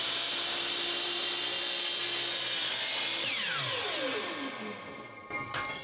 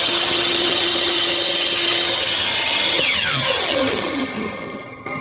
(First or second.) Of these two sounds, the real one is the first